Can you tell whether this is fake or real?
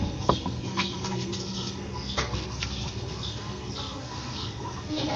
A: fake